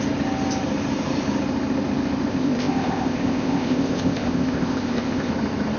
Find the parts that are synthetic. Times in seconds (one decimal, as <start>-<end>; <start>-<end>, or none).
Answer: 2.3-5.3

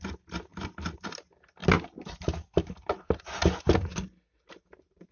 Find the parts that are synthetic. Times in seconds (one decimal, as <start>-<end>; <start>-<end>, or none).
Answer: none

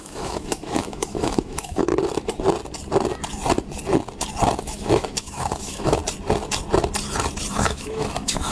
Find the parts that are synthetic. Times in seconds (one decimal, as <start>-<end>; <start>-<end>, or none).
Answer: 0.0-1.9; 4.6-6.0; 7.5-8.5

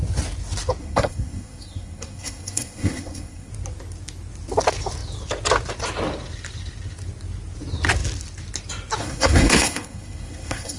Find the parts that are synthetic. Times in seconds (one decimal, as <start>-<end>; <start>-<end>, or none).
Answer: 0.8-3.5; 9.0-10.8

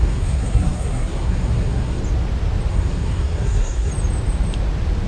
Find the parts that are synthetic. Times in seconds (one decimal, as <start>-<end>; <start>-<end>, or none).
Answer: 0.0-2.0; 2.7-3.9

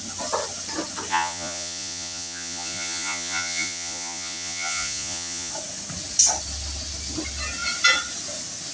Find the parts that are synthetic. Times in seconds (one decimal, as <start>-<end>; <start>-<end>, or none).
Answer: 1.1-5.5